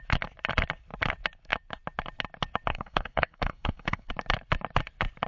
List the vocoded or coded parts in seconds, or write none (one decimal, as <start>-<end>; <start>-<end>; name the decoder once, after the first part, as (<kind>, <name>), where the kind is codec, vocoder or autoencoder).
2.7-4.1 (codec, DAC)